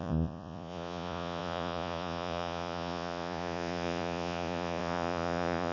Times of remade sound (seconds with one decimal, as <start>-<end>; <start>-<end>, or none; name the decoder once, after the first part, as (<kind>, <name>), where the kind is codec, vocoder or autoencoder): 0.0-5.7 (vocoder, Vocos)